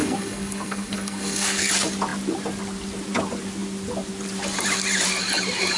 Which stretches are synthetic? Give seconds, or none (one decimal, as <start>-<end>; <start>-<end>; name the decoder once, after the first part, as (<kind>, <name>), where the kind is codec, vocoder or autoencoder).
0.0-1.7 (codec, SNAC)